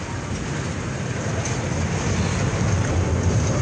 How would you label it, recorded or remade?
recorded